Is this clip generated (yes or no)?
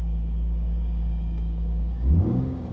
yes